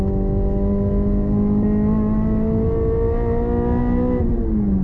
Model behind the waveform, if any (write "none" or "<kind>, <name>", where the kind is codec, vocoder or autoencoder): none